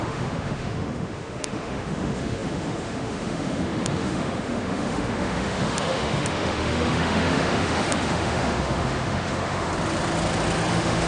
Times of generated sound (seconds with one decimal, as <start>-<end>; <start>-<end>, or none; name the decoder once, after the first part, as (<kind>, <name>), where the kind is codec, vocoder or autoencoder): 0.0-9.7 (autoencoder, DAC-VAE); 10.7-11.1